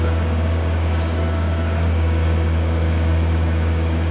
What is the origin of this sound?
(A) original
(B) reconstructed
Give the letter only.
B